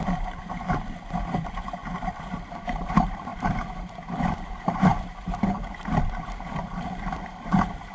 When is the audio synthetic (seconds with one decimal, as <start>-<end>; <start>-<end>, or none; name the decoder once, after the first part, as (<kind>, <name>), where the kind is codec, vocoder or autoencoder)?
0.0-1.8 (vocoder, BigVGAN v2); 2.6-7.9